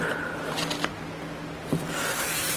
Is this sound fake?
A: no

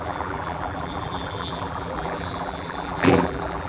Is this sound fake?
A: yes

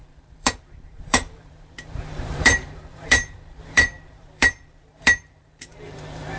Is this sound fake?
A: yes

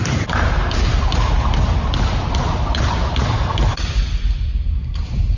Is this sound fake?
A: no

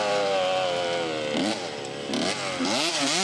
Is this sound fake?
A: no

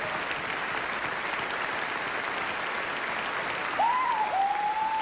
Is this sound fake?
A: no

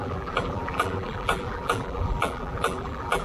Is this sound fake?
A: yes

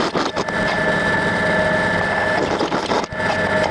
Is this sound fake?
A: no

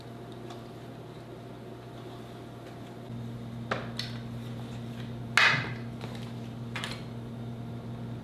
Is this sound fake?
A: no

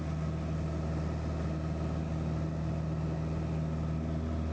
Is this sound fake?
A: no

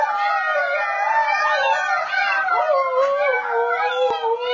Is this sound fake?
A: no